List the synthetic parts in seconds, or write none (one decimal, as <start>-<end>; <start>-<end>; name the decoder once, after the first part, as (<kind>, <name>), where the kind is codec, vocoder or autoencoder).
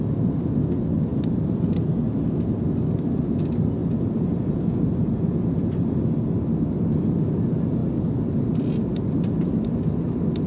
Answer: none